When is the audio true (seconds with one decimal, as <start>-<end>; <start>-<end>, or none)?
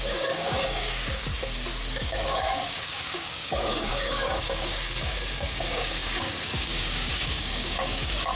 1.3-1.9